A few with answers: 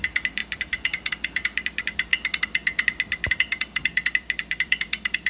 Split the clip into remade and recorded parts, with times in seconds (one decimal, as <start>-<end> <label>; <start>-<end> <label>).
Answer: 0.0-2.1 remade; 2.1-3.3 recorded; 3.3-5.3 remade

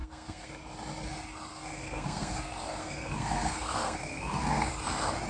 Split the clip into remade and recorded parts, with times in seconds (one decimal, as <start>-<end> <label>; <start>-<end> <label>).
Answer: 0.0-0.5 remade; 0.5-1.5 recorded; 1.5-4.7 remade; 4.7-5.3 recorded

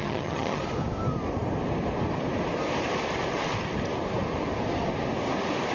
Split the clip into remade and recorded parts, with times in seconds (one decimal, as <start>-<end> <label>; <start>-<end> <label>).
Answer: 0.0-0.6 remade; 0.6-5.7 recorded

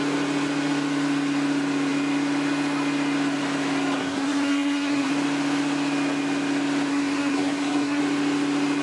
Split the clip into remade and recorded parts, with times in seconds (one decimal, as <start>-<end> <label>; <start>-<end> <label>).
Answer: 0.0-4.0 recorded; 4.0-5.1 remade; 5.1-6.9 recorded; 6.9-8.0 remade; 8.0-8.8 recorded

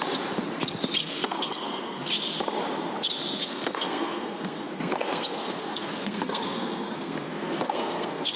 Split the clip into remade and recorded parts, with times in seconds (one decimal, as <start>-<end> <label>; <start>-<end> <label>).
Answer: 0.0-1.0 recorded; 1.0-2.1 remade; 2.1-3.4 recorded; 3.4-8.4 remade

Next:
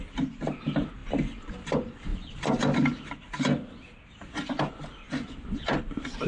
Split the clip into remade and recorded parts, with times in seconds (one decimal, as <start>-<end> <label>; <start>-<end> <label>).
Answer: 0.0-6.3 recorded